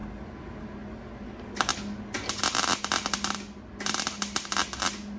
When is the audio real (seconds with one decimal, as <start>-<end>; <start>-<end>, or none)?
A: 0.0-5.2